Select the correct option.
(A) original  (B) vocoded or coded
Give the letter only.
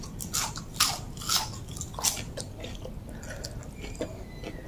A